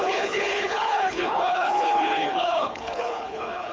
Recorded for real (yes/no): no